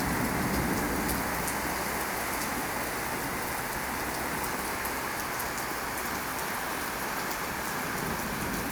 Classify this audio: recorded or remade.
recorded